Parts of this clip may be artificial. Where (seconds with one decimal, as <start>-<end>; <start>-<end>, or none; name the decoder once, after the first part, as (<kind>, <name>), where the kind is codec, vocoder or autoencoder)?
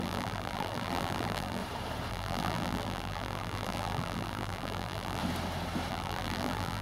0.0-1.6 (vocoder, BigVGAN v2); 2.1-5.2; 5.9-6.8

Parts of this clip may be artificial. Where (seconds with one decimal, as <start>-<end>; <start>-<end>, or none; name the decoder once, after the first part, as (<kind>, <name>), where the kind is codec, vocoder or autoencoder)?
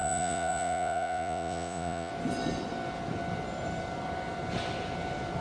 0.0-2.1 (vocoder, Vocos)